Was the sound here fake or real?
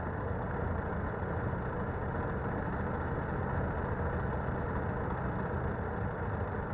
real